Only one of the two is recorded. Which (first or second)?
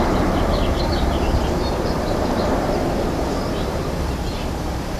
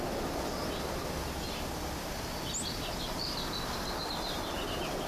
second